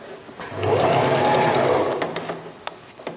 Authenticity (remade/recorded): recorded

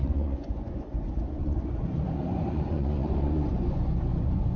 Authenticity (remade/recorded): remade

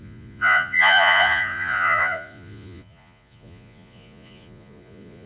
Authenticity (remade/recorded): remade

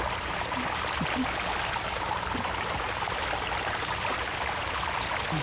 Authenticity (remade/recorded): recorded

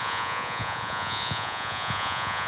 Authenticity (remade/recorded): remade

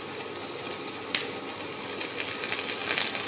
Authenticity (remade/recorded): recorded